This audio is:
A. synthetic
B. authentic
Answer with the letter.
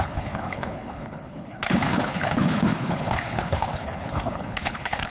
A